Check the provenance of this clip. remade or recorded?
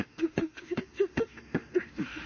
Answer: remade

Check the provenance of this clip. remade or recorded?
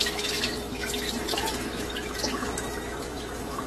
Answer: remade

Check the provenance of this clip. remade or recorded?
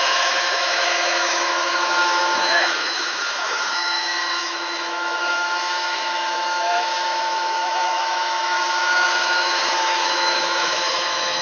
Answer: remade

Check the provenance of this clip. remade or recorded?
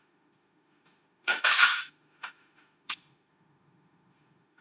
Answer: remade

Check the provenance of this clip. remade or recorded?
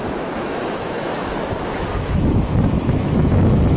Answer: remade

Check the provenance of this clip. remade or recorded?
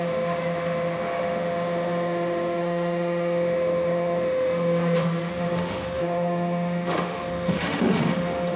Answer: remade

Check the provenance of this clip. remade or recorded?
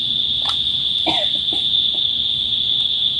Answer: recorded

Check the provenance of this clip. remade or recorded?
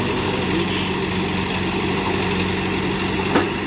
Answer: recorded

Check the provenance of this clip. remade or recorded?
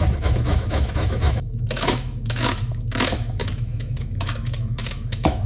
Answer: remade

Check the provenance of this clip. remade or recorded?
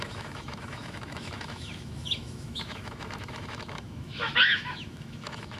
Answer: remade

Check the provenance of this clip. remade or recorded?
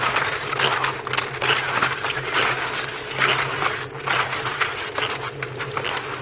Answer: recorded